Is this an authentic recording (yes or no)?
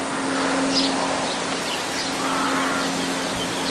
yes